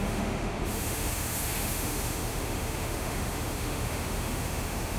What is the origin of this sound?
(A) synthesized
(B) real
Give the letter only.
A